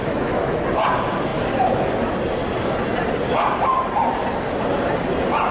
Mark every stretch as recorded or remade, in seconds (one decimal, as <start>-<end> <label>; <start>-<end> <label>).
0.0-0.6 remade; 0.6-5.5 recorded